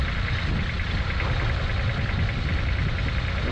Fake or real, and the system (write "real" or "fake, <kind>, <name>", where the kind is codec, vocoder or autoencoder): real